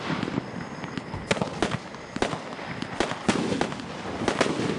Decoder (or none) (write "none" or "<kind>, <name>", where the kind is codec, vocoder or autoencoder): none